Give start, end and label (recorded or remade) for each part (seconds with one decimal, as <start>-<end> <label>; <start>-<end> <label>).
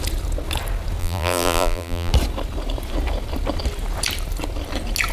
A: 0.0-1.0 recorded; 1.0-2.1 remade; 2.1-5.1 recorded